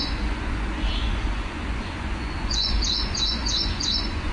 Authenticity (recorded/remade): remade